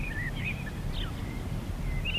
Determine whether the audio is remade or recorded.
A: recorded